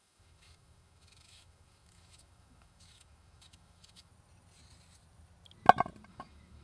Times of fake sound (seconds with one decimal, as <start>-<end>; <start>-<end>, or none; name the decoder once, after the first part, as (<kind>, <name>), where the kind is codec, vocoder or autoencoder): 0.0-4.1 (autoencoder, DAC-VAE); 6.1-6.6